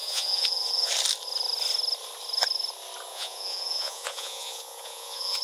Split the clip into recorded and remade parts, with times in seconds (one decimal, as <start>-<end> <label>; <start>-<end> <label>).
0.0-0.9 remade; 0.9-3.1 recorded; 3.1-5.4 remade